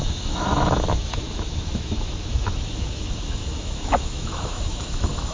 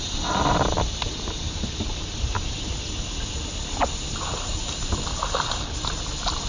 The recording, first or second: second